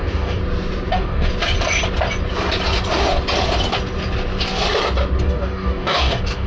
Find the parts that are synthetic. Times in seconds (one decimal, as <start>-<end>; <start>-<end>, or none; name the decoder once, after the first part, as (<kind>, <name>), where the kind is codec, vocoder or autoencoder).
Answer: 0.0-0.4 (codec, DAC); 0.9-1.3; 5.2-6.5